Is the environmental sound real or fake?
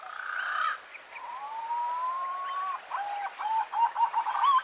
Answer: real